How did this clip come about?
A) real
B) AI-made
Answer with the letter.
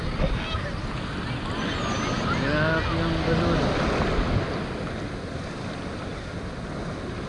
A